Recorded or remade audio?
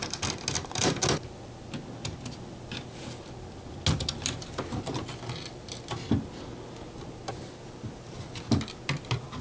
recorded